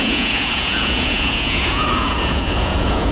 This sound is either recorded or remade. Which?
remade